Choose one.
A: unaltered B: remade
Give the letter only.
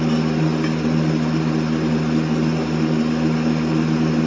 A